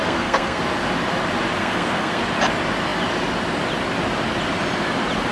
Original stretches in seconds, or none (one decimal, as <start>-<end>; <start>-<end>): 0.6-1.6; 2.2-5.3